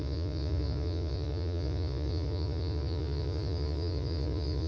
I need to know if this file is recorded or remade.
remade